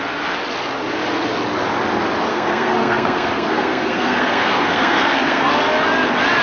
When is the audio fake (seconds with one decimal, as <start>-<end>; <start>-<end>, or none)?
2.3-5.5